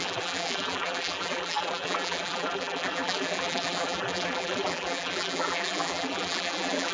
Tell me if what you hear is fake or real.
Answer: fake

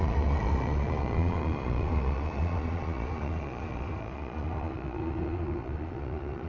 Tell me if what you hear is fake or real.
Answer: fake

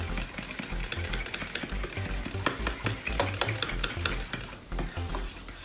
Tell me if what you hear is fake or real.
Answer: real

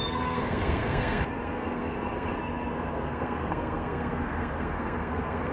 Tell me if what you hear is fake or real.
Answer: fake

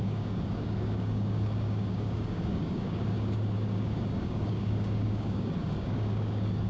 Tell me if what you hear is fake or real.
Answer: fake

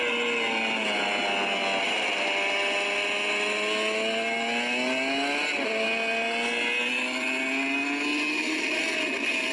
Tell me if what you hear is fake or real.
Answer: real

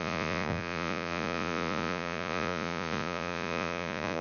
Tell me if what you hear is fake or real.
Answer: fake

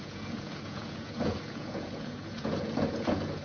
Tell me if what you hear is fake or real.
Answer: fake